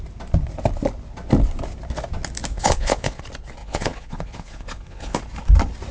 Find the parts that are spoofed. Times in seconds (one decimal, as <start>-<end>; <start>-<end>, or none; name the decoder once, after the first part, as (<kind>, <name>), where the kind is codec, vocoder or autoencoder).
2.5-3.2 (vocoder, Vocos); 3.6-5.2